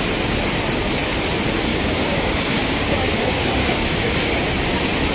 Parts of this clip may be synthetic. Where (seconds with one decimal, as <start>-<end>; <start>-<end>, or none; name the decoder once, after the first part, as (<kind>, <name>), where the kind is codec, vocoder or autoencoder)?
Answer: 1.7-4.4 (codec, DAC)